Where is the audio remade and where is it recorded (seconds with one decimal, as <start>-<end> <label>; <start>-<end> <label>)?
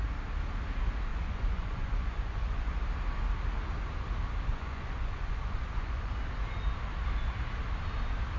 0.0-1.1 recorded; 1.1-2.7 remade; 2.7-4.5 recorded; 4.5-6.1 remade; 6.1-8.4 recorded